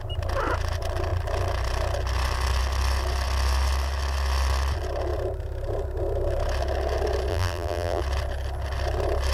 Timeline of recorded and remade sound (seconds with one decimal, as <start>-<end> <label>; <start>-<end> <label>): 0.0-7.3 recorded; 7.3-8.0 remade; 8.0-9.3 recorded